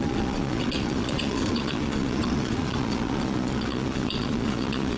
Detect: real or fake fake